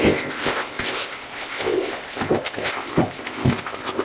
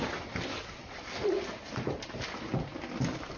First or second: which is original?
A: second